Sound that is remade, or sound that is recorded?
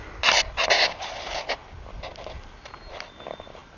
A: recorded